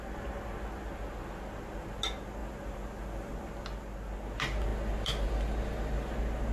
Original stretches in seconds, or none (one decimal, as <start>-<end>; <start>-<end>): 0.0-6.5